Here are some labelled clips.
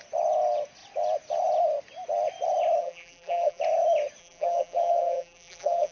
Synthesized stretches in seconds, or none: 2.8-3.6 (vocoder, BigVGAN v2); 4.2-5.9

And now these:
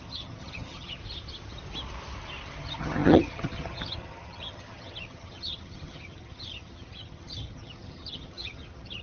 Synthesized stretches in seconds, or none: 0.0-1.0 (vocoder, HiFi-GAN); 2.6-9.0

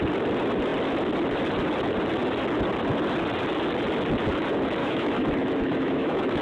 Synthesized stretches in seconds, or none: 4.8-6.4 (autoencoder, DAC-VAE)

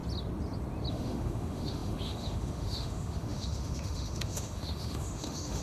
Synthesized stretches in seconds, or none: 0.9-5.6 (autoencoder, DAC-VAE)

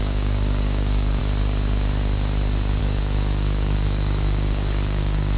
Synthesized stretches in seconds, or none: 0.0-1.2 (codec, DAC); 2.8-5.4